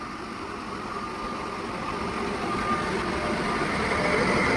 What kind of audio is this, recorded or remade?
recorded